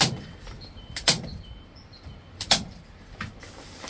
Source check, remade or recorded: remade